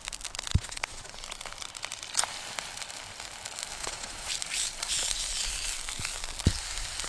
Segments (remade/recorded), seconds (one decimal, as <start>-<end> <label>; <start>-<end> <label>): 0.0-0.5 recorded; 0.5-1.1 remade; 1.1-3.8 recorded; 3.8-4.3 remade; 4.3-7.1 recorded